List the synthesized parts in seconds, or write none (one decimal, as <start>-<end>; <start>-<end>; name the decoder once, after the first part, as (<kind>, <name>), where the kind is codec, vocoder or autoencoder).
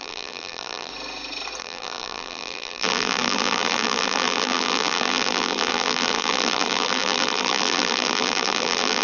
0.0-0.9 (vocoder, BigVGAN v2); 1.6-9.0